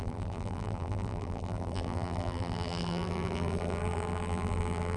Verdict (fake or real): fake